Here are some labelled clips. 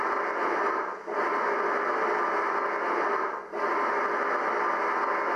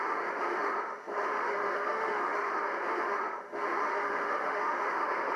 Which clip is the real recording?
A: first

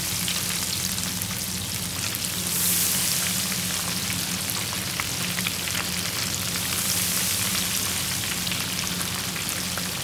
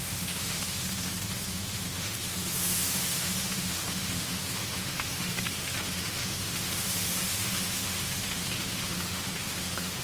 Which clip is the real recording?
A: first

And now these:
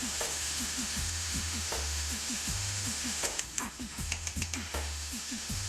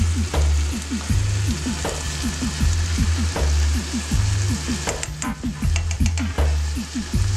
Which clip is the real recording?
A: second